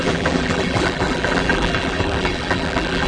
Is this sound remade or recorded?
remade